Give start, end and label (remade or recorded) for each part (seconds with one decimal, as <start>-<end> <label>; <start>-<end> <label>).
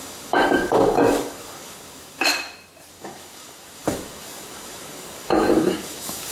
0.0-2.3 remade; 2.3-2.9 recorded; 2.9-6.3 remade